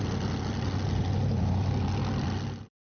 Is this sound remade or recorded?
recorded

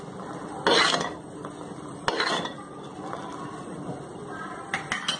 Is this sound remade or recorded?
recorded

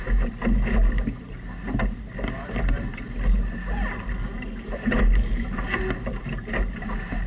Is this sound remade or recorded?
recorded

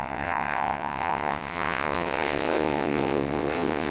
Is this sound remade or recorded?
remade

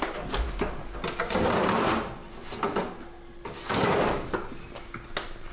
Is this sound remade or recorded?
recorded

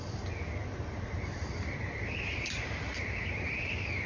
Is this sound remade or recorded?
remade